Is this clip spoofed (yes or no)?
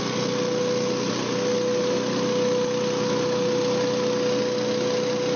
no